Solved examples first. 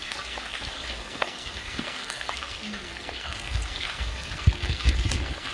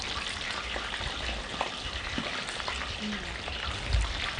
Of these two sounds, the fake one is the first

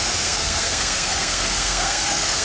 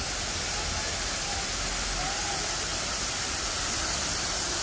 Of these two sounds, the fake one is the first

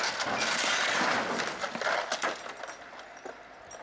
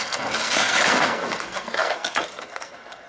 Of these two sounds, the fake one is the second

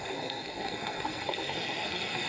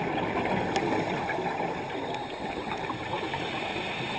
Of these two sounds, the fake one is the first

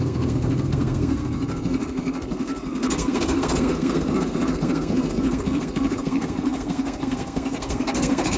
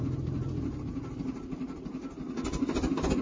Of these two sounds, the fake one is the first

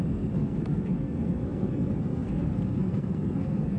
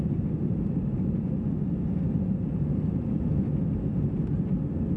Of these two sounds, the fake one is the first